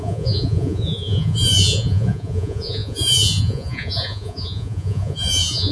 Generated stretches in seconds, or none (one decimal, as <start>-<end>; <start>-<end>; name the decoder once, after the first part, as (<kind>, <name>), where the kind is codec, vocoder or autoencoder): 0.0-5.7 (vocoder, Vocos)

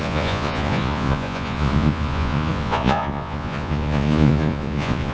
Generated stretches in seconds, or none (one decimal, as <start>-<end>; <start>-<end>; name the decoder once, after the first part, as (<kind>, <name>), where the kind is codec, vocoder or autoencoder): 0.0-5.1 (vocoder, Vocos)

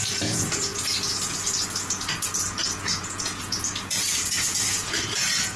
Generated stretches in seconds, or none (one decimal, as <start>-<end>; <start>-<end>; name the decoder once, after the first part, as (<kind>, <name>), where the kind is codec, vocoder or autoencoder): 0.0-5.6 (vocoder, Vocos)